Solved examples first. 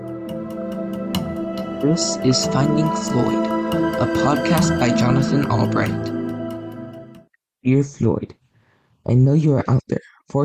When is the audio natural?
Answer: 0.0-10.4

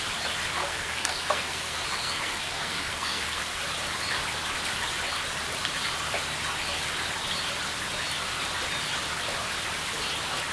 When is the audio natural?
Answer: 0.0-0.6; 3.6-10.5

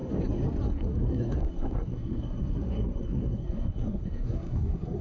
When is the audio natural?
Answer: 0.0-0.7

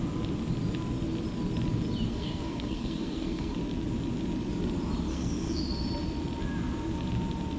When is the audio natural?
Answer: 0.0-2.1; 3.6-5.1; 5.6-7.6

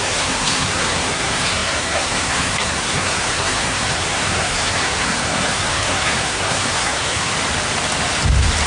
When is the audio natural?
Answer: 7.3-8.7